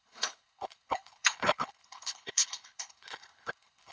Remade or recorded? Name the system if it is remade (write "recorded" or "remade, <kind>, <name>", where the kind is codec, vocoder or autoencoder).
remade, codec, HILCodec